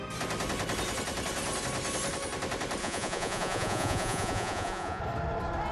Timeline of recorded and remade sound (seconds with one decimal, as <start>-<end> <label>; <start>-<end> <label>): 0.0-2.8 recorded; 2.8-5.0 remade; 5.0-5.7 recorded